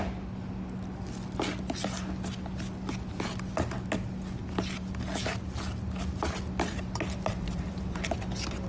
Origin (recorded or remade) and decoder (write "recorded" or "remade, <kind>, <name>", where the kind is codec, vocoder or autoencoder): recorded